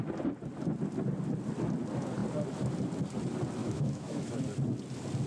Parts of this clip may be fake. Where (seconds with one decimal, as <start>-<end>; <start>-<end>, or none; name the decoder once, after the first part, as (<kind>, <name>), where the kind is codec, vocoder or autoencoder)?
3.6-4.4 (autoencoder, DAC-VAE)

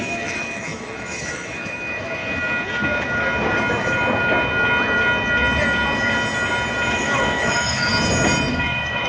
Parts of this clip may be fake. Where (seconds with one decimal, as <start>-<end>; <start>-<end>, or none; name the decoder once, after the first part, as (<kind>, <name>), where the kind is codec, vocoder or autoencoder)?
0.0-2.2 (autoencoder, DAC-VAE); 6.9-7.9; 8.5-9.1

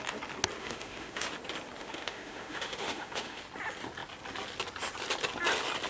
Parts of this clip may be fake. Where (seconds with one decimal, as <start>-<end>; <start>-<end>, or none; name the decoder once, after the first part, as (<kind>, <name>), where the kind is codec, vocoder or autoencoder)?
0.6-1.3 (autoencoder, DAC-VAE); 1.8-3.4

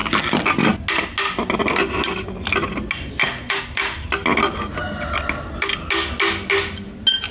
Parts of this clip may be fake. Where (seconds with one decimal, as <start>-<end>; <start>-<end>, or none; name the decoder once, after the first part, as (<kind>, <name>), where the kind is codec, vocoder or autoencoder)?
none

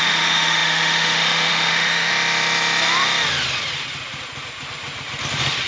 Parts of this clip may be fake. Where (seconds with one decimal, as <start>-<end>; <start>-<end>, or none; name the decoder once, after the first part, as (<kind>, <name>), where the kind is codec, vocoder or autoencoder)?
0.0-2.1 (autoencoder, DAC-VAE)